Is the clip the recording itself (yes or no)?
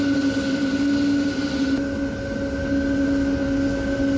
yes